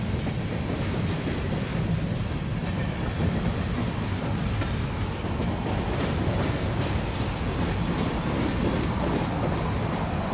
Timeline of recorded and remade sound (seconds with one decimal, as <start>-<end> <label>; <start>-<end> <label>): 0.0-7.5 recorded; 7.5-8.5 remade; 8.5-10.3 recorded